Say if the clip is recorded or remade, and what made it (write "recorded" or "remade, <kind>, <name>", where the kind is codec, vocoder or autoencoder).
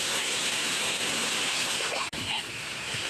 remade, codec, SNAC